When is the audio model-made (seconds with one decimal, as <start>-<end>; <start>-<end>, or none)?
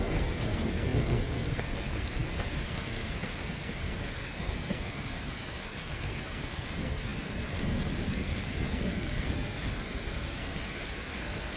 0.0-11.6